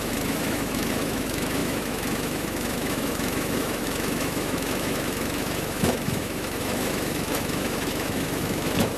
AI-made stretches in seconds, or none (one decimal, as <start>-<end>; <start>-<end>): 0.0-9.0